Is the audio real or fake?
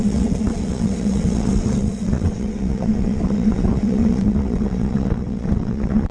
fake